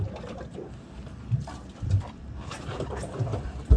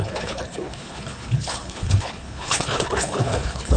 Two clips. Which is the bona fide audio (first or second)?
first